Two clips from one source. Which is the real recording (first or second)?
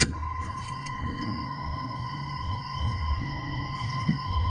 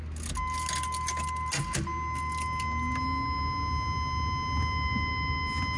second